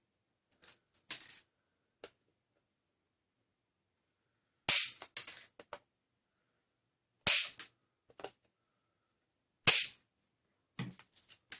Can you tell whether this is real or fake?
real